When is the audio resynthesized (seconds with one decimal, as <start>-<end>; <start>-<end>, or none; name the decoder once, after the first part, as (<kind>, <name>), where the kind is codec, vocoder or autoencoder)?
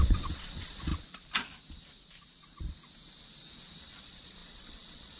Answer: 0.0-0.9 (vocoder, WaveNeXt); 3.8-5.2